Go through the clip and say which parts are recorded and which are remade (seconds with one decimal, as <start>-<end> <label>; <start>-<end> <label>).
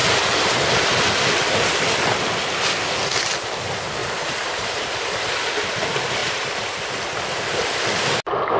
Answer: 0.0-4.0 recorded; 4.0-5.3 remade; 5.3-6.2 recorded; 6.2-6.9 remade; 6.9-8.6 recorded